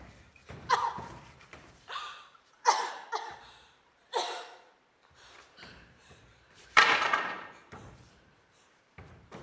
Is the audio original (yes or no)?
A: no